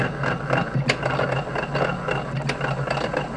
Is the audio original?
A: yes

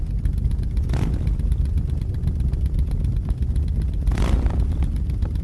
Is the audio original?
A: yes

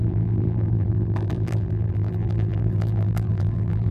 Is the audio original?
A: no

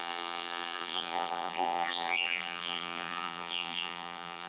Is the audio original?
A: no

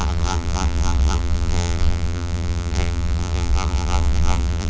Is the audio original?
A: no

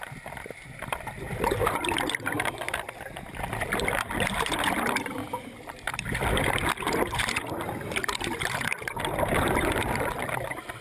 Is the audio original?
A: no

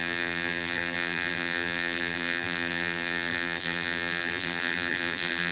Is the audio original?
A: no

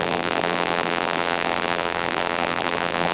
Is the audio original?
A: no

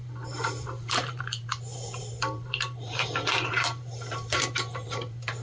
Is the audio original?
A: no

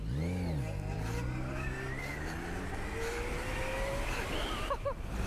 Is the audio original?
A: yes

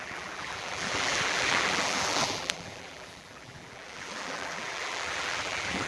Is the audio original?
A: no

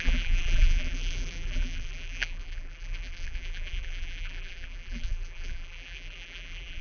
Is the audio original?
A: no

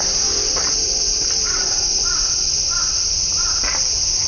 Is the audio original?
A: no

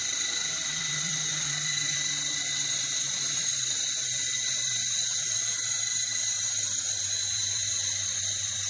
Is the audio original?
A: no